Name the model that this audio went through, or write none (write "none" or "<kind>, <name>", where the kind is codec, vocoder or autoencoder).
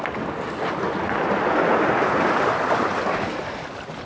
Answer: none